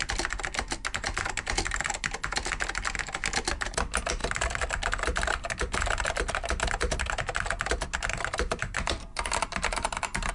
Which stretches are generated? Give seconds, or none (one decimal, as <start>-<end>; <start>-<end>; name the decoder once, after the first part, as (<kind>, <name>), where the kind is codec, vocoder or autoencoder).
none